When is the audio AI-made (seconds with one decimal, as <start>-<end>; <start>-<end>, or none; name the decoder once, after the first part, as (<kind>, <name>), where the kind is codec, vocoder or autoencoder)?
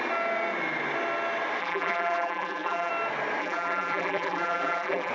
1.6-2.9 (vocoder, BigVGAN v2); 3.4-5.1